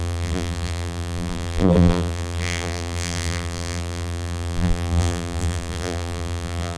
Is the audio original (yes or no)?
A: no